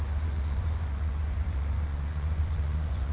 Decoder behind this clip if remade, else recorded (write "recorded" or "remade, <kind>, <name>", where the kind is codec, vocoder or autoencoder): remade, vocoder, Vocos